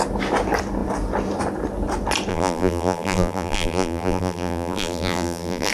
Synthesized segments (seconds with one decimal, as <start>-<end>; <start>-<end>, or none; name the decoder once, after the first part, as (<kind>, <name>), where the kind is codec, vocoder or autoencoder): 2.3-5.7 (vocoder, BigVGAN v2)